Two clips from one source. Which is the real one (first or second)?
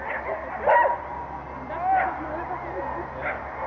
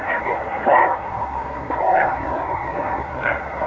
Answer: first